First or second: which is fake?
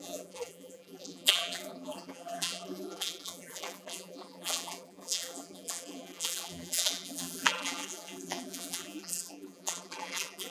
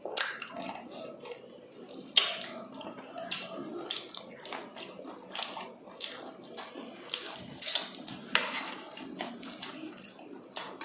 first